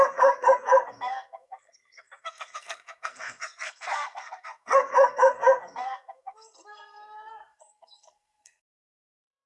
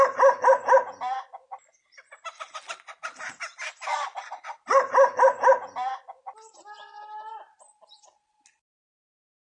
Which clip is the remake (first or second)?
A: first